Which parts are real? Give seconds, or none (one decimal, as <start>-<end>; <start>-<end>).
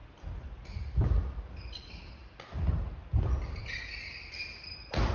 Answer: 0.0-5.1